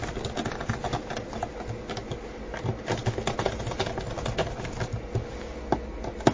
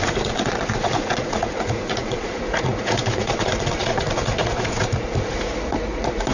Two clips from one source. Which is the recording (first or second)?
first